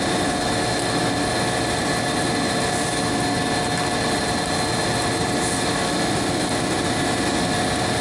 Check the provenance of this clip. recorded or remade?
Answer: recorded